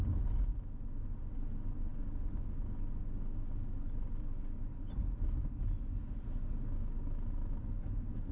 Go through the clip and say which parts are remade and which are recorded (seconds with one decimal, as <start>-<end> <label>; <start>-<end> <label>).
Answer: 0.0-8.3 recorded

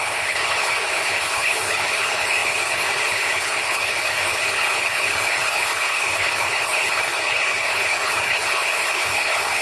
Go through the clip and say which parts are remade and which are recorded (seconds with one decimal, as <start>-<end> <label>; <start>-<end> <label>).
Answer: 0.0-9.6 remade